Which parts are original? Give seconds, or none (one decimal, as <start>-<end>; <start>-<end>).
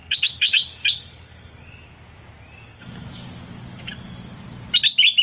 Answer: 1.9-2.7; 3.3-5.2